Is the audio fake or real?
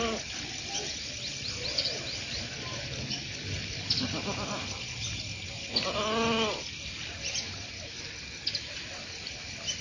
real